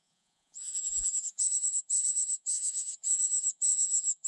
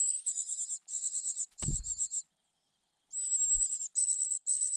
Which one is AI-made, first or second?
first